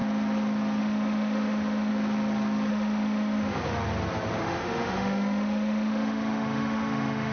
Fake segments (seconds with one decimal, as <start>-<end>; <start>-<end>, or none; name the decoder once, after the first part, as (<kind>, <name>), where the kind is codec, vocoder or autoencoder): 0.8-1.9 (autoencoder, DAC-VAE); 2.7-3.6; 4.4-7.3